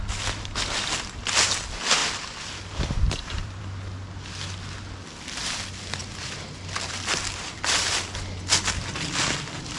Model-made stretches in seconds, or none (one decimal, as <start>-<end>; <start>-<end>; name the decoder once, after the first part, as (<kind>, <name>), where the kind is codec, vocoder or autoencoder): 2.0-3.6 (vocoder, BigVGAN v2); 6.0-7.7

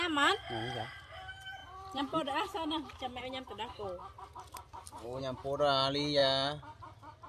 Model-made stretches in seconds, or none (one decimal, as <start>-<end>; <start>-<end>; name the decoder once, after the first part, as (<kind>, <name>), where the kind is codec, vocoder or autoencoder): 1.6-3.2 (vocoder, BigVGAN v2)